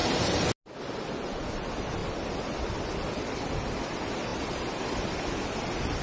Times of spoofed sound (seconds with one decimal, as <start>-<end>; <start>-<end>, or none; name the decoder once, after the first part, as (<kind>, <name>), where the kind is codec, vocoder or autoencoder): none